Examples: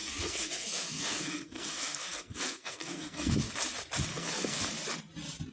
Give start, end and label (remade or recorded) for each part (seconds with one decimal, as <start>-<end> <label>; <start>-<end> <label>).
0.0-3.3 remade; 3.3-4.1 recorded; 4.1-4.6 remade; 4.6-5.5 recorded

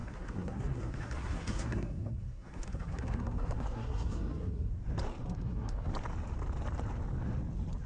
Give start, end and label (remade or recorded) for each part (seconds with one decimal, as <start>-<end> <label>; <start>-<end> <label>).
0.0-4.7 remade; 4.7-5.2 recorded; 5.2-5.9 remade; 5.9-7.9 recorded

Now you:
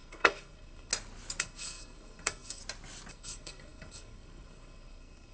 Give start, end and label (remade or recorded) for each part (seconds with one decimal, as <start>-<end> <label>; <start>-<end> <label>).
0.0-0.9 remade; 0.9-1.4 recorded; 1.4-2.6 remade; 2.6-3.1 recorded; 3.1-5.3 remade

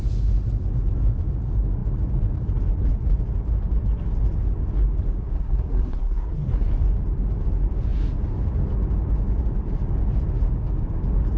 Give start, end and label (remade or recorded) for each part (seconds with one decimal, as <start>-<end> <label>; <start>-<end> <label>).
0.0-5.3 recorded; 5.3-6.7 remade; 6.7-11.4 recorded

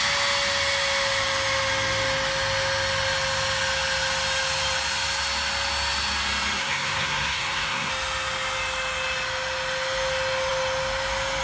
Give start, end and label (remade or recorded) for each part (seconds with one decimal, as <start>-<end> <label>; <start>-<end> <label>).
0.0-6.6 recorded; 6.6-7.9 remade; 7.9-11.4 recorded